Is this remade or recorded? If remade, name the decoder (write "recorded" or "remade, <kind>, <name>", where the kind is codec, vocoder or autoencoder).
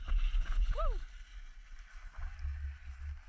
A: recorded